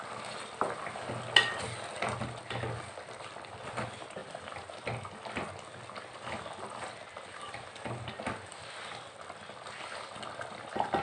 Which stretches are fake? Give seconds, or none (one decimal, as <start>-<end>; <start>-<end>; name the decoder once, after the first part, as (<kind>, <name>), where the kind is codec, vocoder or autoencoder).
none